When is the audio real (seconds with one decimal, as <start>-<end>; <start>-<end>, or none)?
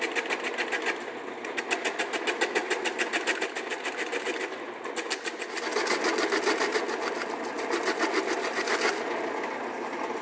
0.0-10.2